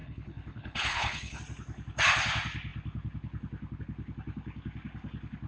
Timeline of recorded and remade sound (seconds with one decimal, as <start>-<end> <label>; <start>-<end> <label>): 0.0-1.4 remade; 1.4-5.5 recorded